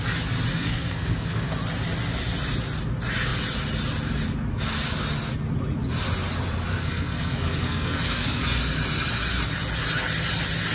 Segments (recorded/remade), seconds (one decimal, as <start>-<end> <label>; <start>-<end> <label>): 0.0-0.5 recorded; 0.5-1.5 remade; 1.5-6.7 recorded; 6.7-8.4 remade; 8.4-10.7 recorded